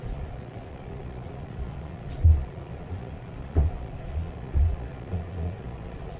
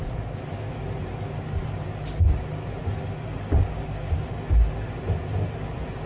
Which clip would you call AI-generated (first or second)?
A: first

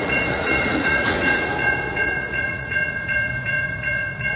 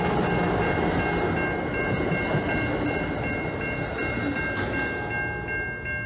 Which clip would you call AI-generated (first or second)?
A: first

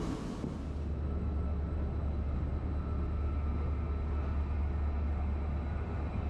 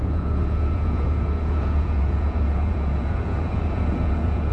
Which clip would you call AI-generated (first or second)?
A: second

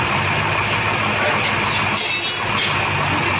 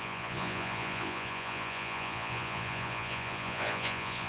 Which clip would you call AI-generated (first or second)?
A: second